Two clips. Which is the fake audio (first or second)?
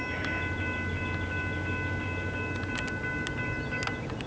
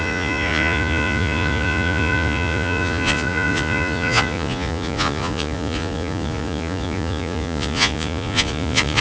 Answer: second